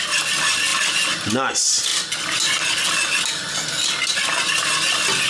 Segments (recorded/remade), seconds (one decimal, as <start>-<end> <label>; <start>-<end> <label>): 0.0-5.3 recorded